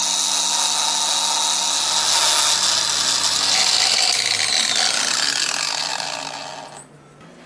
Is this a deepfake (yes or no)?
no